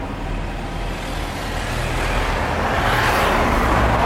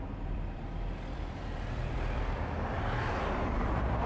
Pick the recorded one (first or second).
first